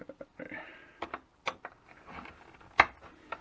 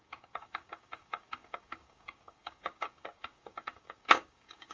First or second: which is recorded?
first